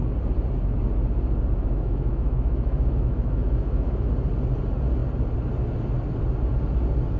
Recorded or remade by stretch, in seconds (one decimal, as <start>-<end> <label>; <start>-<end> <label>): 0.0-1.6 recorded; 1.6-4.1 remade; 4.1-7.2 recorded